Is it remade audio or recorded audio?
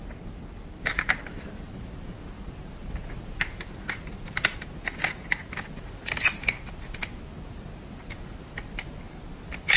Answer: recorded